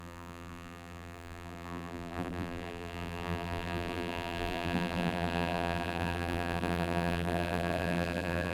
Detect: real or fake fake